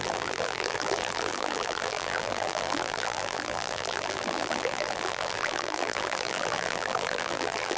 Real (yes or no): no